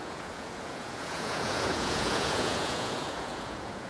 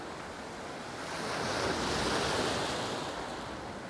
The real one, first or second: second